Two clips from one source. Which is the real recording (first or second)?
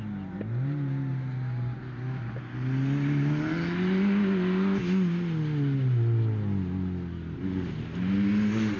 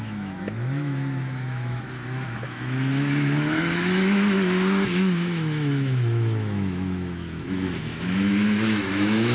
first